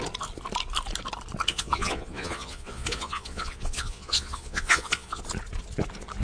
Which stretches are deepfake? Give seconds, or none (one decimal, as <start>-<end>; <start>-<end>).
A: 1.5-5.2

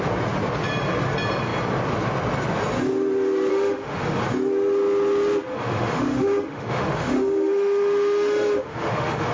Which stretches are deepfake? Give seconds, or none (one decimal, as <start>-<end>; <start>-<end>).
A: 3.5-4.2; 5.5-9.3

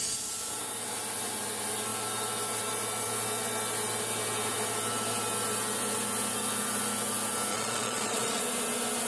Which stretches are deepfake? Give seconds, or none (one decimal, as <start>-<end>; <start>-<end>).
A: 7.5-8.4

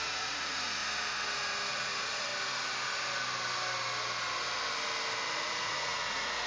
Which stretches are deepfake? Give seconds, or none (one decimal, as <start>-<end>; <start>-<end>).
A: 0.0-0.8; 1.7-2.3; 5.3-6.5

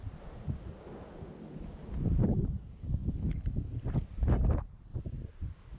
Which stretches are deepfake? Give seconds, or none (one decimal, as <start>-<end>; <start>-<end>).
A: none

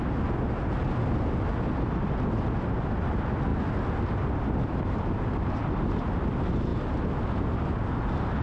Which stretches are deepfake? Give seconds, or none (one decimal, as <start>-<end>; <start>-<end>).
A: none

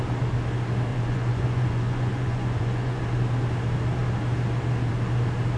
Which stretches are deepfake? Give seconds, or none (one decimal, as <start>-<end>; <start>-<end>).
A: 0.9-3.0